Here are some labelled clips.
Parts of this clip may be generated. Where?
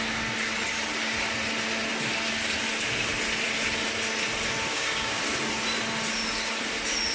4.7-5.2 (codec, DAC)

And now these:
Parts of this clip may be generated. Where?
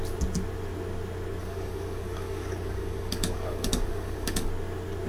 1.4-4.5 (codec, DAC)